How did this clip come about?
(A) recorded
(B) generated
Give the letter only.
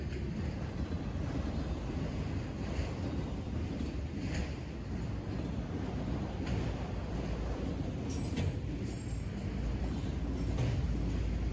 A